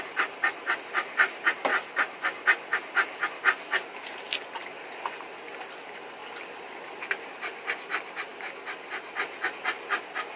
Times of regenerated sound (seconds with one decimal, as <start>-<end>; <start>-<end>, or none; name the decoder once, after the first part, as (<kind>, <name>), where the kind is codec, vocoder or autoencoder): none